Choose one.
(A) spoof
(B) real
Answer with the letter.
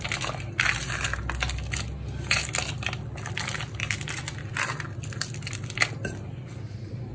B